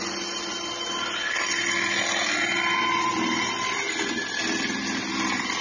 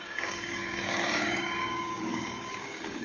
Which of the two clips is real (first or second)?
first